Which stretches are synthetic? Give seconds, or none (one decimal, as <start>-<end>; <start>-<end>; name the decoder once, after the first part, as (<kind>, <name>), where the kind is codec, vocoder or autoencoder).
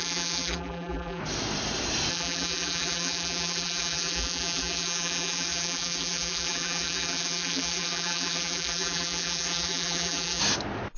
0.0-1.2 (vocoder, BigVGAN v2); 2.1-10.4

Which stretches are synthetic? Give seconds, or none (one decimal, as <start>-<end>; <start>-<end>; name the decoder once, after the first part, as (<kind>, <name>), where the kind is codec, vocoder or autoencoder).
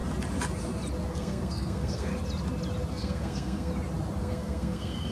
1.1-2.1 (codec, SNAC); 2.9-3.7; 4.2-5.1